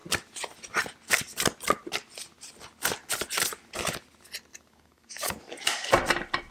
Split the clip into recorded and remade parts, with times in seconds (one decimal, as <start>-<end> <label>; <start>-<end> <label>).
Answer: 0.0-4.5 recorded; 4.5-5.9 remade; 5.9-6.5 recorded